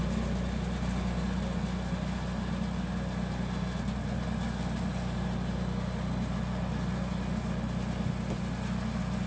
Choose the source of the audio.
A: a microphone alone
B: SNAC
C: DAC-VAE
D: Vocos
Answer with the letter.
A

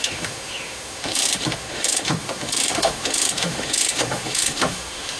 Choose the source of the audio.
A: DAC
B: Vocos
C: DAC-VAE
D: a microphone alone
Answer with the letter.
C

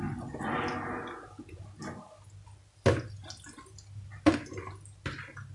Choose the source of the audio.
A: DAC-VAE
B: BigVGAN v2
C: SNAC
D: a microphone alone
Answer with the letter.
D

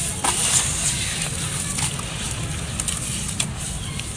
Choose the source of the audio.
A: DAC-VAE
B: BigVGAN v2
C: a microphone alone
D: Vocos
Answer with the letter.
C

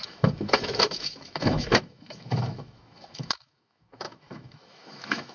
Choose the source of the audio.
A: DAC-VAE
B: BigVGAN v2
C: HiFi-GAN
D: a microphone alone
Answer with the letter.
A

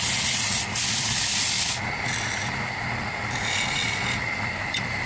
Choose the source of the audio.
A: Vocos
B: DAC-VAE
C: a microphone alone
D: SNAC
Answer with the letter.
C